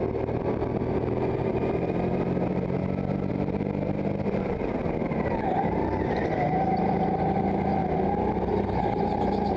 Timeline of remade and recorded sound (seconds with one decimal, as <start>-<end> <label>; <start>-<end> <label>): 0.0-2.8 remade; 2.8-3.3 recorded; 3.3-7.8 remade; 7.8-8.5 recorded; 8.5-9.6 remade